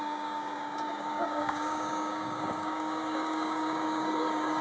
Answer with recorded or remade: remade